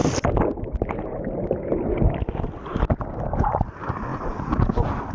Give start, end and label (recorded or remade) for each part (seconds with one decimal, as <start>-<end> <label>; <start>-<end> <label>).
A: 0.0-5.1 recorded